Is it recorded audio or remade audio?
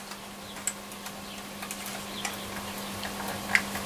recorded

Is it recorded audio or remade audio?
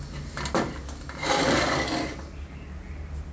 recorded